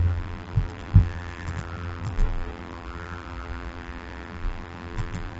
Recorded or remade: remade